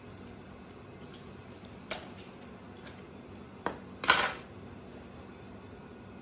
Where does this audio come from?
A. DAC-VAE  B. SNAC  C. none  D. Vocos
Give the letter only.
C